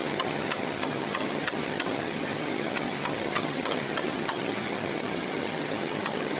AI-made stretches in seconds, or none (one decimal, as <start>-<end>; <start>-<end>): 0.0-6.4